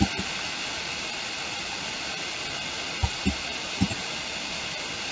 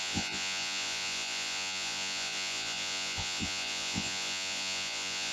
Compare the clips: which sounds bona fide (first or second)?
first